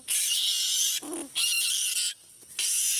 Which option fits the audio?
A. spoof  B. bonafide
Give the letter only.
B